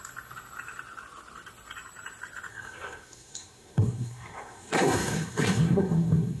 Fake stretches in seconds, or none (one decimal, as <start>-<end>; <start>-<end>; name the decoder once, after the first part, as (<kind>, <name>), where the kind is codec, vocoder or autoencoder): 2.5-6.4 (codec, SNAC)